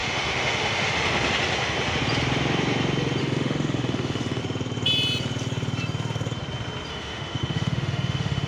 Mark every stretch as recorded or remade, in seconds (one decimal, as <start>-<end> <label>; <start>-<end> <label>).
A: 0.0-0.9 remade; 0.9-3.2 recorded; 3.2-4.4 remade; 4.4-6.9 recorded; 6.9-8.5 remade